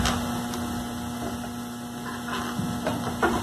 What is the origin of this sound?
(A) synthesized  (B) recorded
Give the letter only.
B